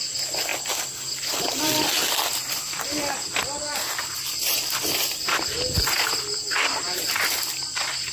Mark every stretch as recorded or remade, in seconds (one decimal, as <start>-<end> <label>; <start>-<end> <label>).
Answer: 0.0-8.1 recorded